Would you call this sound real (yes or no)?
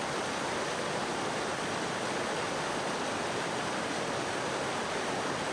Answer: yes